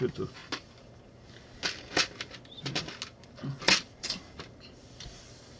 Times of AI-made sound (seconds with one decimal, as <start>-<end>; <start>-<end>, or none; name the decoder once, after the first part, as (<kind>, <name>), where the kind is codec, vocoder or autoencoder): none